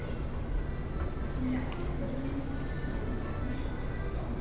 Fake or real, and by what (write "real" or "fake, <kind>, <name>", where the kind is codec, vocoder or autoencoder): real